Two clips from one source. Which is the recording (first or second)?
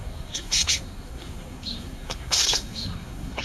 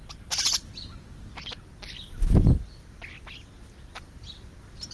second